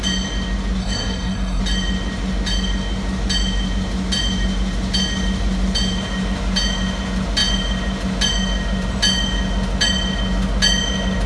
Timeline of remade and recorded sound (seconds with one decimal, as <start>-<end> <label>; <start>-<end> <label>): 0.0-0.8 recorded; 0.8-1.6 remade; 1.6-11.3 recorded